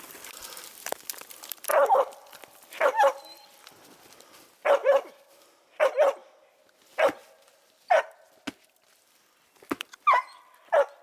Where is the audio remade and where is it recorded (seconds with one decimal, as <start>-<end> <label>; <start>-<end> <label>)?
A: 0.0-1.7 recorded; 1.7-3.6 remade; 3.6-4.8 recorded; 4.8-5.3 remade; 5.3-11.0 recorded